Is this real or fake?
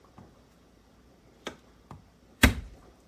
fake